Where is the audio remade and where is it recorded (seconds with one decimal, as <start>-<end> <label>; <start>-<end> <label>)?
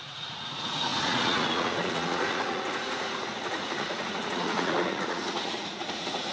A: 0.0-6.3 remade